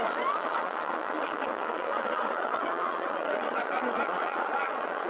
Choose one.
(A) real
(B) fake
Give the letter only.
B